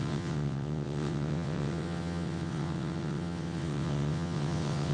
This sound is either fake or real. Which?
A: fake